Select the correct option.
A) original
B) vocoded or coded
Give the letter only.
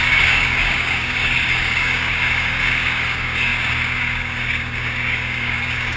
B